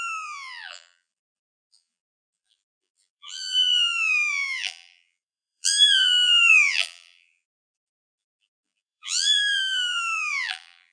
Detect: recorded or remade remade